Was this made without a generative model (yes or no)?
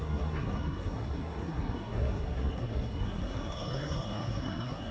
no